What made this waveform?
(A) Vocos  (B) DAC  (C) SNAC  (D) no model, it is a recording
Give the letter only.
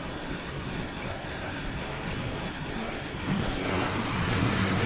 C